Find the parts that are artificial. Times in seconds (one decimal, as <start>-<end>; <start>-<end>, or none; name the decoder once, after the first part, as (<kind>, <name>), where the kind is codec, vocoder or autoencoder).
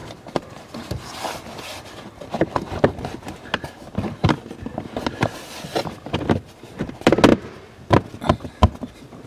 none